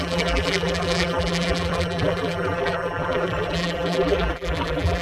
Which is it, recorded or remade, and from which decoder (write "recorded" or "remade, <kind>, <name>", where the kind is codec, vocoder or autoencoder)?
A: remade, vocoder, BigVGAN v2